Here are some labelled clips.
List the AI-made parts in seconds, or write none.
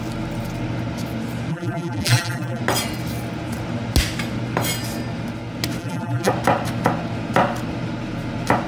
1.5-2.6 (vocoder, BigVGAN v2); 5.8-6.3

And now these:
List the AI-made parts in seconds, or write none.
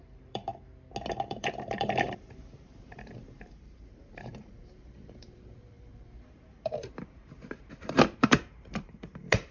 0.0-0.5 (vocoder, BigVGAN v2); 1.1-9.5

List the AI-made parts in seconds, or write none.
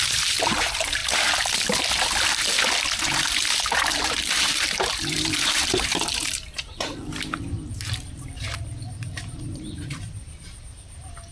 0.0-1.0 (vocoder, BigVGAN v2); 3.6-11.3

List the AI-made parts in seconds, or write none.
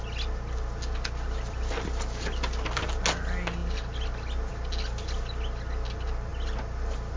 none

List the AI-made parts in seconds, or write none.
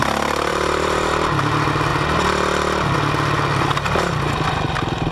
0.5-1.1 (vocoder, BigVGAN v2)